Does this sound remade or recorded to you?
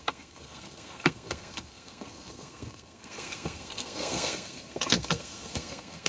remade